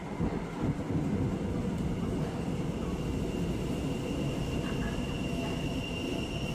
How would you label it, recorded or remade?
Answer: recorded